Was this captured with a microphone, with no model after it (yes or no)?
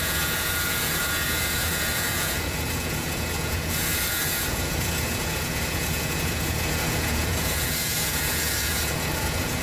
no